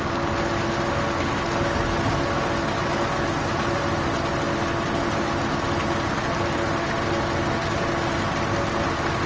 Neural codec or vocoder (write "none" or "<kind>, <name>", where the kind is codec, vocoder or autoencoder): none